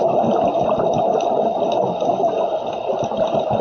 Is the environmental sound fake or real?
real